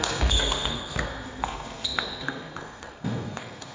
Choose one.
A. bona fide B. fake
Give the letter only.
B